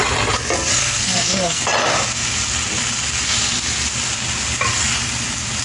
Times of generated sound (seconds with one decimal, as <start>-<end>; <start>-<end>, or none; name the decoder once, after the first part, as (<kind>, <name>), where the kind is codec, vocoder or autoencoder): 0.8-1.6 (codec, SNAC)